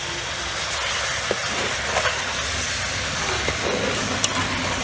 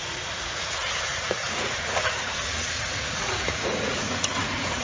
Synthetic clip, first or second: second